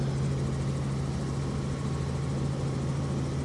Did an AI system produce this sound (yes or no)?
no